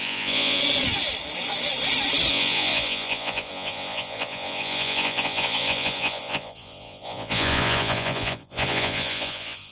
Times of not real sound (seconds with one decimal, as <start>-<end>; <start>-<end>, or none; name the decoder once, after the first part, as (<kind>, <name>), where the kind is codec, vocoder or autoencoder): 0.0-0.6 (vocoder, Vocos); 2.3-9.7